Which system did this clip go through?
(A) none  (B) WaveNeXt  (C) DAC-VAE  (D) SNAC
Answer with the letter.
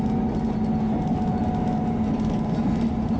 A